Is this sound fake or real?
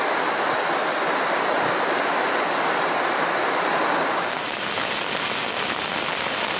real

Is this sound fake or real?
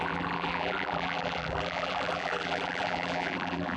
fake